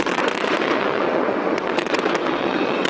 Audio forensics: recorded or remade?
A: remade